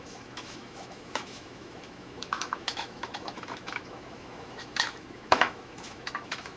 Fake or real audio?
fake